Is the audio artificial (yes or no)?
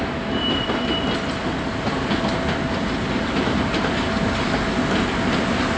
no